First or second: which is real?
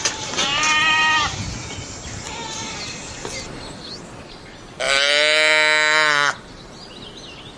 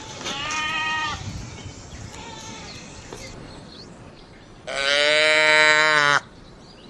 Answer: first